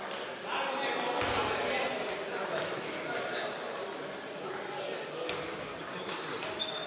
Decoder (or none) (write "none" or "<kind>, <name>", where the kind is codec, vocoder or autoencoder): none